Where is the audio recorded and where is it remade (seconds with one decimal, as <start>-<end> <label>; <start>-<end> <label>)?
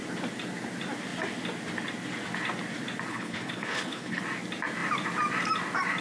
0.0-3.1 recorded; 3.1-4.2 remade; 4.2-6.0 recorded